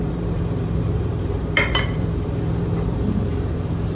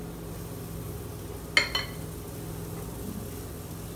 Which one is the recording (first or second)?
second